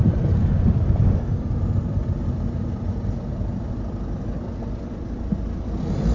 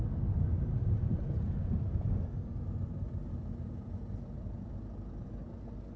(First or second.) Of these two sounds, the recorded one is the second